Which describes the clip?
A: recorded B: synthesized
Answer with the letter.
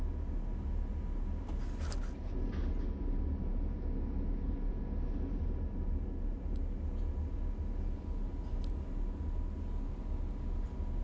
A